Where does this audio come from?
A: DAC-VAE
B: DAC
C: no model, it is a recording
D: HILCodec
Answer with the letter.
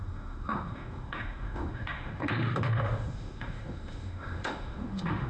A